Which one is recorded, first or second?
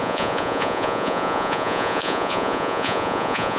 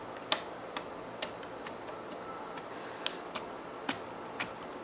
second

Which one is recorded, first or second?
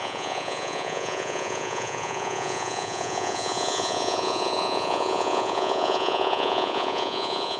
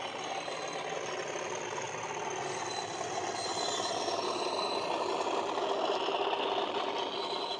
second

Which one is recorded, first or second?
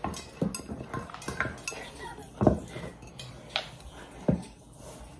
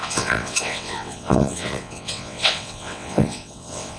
first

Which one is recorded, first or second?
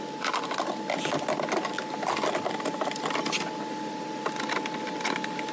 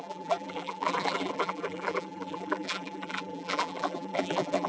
first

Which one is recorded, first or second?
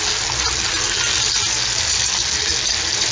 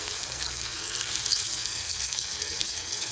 first